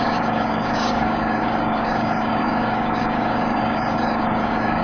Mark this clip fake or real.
fake